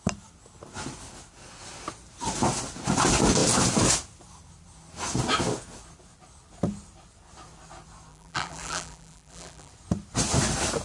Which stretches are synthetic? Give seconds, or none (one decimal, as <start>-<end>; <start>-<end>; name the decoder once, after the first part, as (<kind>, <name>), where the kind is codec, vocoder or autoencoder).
8.1-9.7 (vocoder, BigVGAN v2)

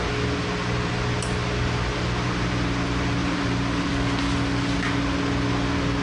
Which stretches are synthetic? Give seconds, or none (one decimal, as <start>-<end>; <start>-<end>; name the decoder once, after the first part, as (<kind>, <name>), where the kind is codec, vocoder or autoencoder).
3.2-3.9 (vocoder, BigVGAN v2)